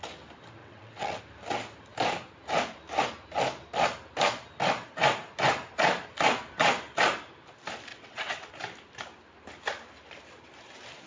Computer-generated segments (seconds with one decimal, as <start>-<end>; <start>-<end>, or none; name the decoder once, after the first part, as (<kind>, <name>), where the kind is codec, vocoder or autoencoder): 0.6-1.2 (vocoder, WaveNeXt); 7.9-8.5